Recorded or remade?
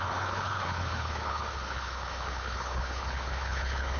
remade